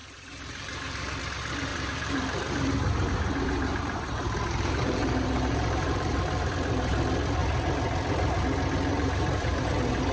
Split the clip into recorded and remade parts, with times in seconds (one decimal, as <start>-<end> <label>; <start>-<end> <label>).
0.0-1.2 remade; 1.2-1.7 recorded; 1.7-6.5 remade; 6.5-8.9 recorded; 8.9-9.7 remade; 9.7-10.1 recorded